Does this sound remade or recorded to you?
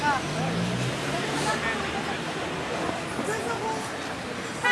recorded